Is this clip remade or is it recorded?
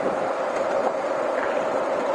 recorded